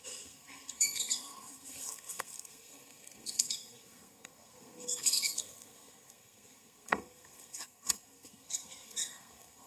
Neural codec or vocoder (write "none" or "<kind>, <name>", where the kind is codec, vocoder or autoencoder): codec, SNAC